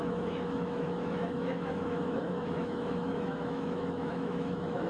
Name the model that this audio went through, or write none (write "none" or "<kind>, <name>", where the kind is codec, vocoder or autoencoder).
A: autoencoder, DAC-VAE